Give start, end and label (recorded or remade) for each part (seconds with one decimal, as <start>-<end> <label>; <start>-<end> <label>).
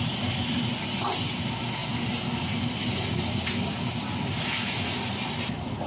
0.0-5.9 recorded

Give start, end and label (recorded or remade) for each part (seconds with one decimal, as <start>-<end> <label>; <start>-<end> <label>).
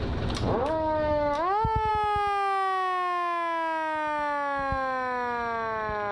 0.0-0.6 recorded; 0.6-1.9 remade; 1.9-6.1 recorded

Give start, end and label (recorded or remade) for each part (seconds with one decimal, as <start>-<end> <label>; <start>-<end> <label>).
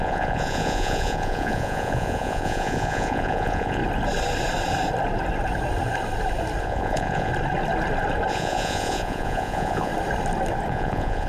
0.0-3.8 remade; 3.8-6.6 recorded; 6.6-7.3 remade; 7.3-8.3 recorded; 8.3-9.9 remade; 9.9-10.7 recorded; 10.7-11.3 remade